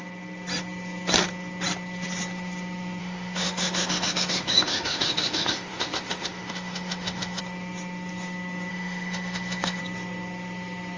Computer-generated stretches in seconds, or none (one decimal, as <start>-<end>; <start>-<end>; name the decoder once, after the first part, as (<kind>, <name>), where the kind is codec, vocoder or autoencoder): 3.0-7.4 (autoencoder, DAC-VAE); 8.7-9.8